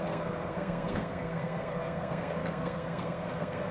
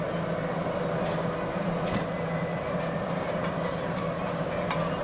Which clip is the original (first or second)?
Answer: second